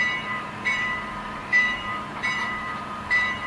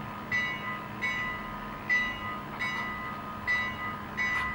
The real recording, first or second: second